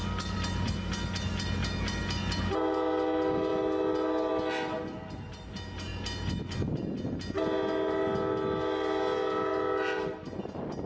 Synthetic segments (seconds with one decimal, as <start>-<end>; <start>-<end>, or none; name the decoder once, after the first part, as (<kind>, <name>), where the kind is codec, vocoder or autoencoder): none